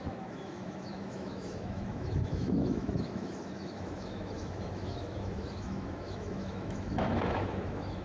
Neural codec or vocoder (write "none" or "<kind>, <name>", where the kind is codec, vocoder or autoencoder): autoencoder, DAC-VAE